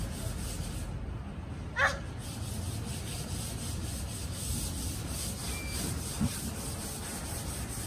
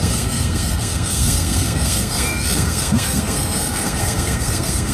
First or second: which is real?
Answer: first